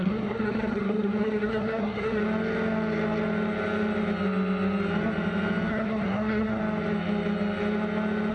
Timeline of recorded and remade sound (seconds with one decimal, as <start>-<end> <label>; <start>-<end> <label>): 0.0-2.2 remade; 2.2-5.7 recorded; 5.7-6.6 remade; 6.6-8.3 recorded